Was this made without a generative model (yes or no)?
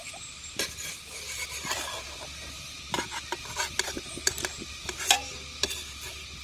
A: no